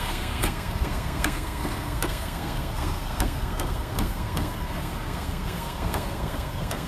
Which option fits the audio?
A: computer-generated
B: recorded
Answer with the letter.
A